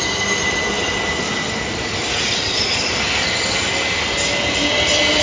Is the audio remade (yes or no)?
no